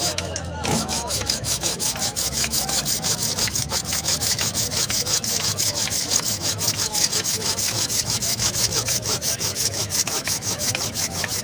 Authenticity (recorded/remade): remade